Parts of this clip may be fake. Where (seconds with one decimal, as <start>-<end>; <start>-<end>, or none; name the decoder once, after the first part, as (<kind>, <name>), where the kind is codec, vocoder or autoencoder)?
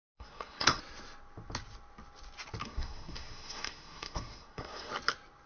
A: 0.0-0.8 (codec, SNAC); 2.6-4.9